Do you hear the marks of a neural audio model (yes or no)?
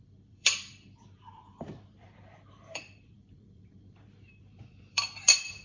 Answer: yes